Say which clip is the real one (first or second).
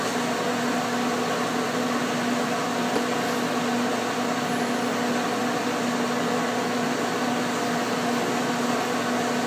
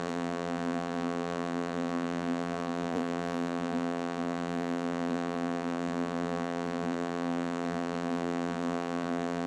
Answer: first